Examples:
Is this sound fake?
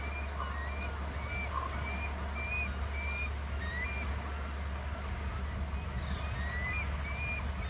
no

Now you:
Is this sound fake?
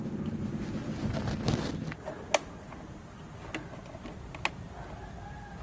no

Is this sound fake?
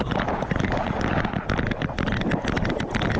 no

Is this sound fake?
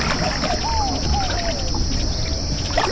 no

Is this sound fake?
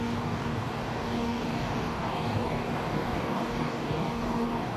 yes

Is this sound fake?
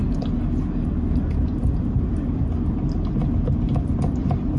no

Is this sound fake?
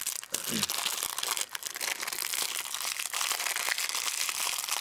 no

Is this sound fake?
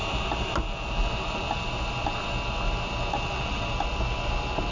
no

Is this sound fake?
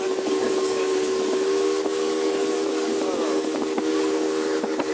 yes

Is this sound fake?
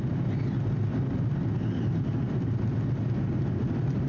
no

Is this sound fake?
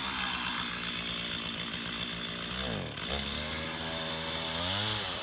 no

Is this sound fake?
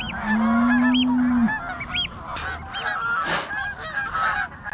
no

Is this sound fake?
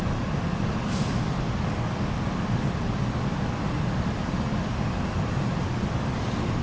no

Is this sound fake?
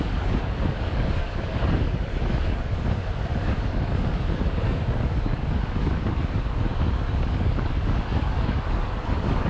yes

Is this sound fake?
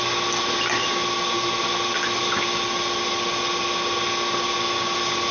no